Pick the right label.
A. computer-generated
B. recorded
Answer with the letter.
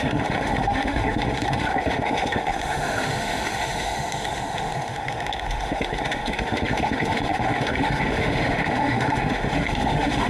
A